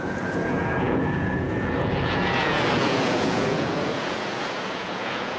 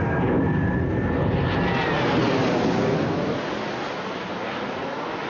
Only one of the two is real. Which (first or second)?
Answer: second